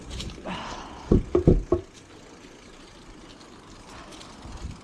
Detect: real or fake real